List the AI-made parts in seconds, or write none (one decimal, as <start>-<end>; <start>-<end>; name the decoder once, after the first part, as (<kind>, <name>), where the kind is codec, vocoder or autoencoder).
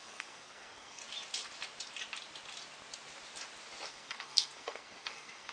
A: 0.0-1.0 (codec, SNAC); 3.9-5.5